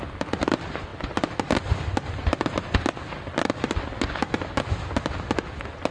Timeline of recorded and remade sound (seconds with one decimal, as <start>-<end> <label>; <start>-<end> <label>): 0.0-5.9 recorded